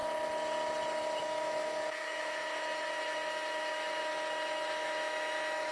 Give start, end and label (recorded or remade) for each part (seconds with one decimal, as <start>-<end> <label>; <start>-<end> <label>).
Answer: 0.0-1.2 recorded; 1.2-5.7 remade